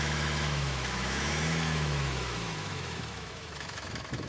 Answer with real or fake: fake